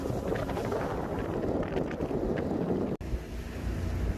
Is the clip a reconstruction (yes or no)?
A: no